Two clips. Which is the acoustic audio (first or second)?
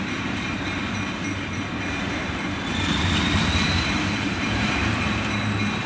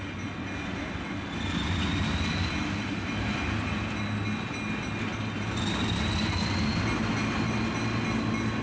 second